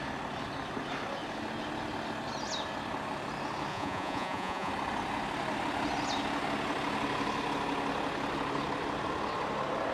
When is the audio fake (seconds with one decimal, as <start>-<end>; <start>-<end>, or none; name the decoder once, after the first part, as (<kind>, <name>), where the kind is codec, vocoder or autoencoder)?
3.7-4.7 (vocoder, Vocos)